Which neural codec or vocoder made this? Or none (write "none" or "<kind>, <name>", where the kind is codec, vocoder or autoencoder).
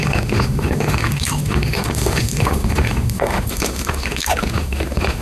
autoencoder, DAC-VAE